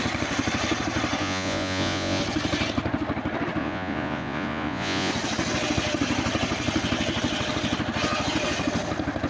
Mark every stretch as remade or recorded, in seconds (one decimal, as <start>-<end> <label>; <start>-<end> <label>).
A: 0.0-1.2 recorded; 1.2-2.2 remade; 2.2-3.6 recorded; 3.6-5.1 remade; 5.1-9.3 recorded